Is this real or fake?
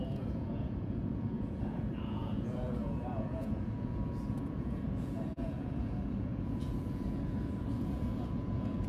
fake